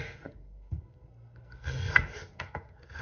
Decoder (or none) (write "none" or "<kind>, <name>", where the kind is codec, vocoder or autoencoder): codec, SNAC